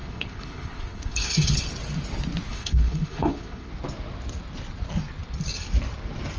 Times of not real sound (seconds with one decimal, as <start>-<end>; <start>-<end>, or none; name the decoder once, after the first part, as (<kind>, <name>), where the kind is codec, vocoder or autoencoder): 0.0-1.6 (codec, HILCodec); 2.5-3.7